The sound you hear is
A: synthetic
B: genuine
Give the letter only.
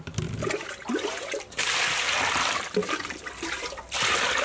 B